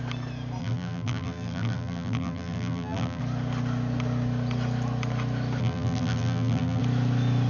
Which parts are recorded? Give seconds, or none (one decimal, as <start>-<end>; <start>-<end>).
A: 0.0-0.6; 3.2-5.6; 6.8-7.5